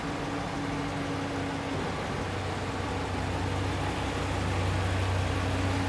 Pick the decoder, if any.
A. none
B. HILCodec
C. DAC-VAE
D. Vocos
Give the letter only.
A